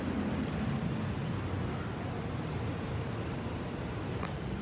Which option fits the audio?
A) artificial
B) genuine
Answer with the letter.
B